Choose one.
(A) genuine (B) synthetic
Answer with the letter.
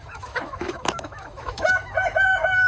B